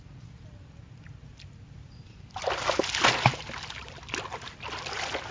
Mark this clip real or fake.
real